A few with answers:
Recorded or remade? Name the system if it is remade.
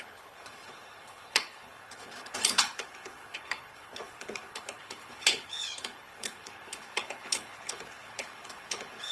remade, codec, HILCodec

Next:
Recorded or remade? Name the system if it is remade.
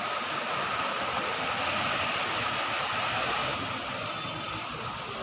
recorded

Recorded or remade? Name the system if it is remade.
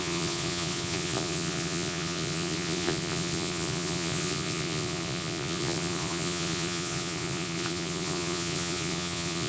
remade, vocoder, Vocos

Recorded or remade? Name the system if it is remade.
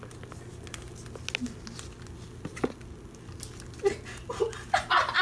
recorded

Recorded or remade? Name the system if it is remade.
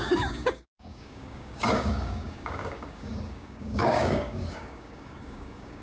remade, codec, DAC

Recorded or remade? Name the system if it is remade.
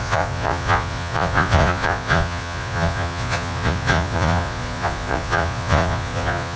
remade, vocoder, Vocos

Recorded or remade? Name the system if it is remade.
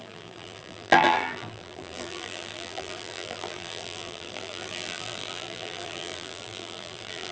remade, vocoder, BigVGAN v2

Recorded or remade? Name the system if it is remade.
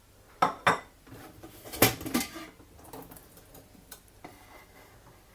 recorded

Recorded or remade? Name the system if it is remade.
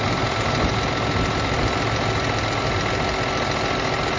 recorded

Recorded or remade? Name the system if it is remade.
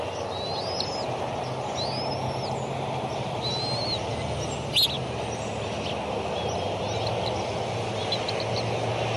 recorded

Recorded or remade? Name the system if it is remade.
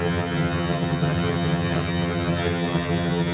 remade, vocoder, HiFi-GAN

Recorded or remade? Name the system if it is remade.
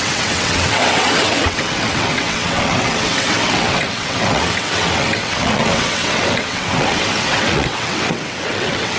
remade, vocoder, WaveNeXt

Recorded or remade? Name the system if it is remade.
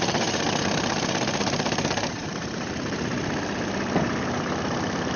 remade, vocoder, BigVGAN v2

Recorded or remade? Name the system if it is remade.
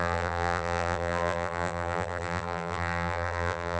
remade, vocoder, BigVGAN v2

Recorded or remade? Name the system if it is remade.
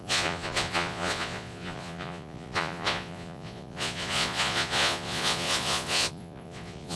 remade, vocoder, Vocos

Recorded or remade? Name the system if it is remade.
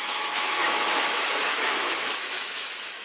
remade, autoencoder, DAC-VAE